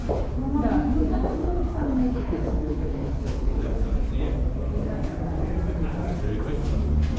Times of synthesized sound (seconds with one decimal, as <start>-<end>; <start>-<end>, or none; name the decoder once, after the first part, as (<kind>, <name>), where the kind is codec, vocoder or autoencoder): 1.4-3.9 (codec, HILCodec)